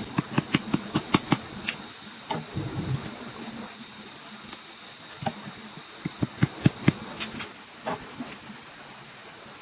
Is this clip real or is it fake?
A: real